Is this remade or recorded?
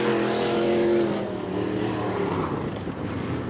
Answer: recorded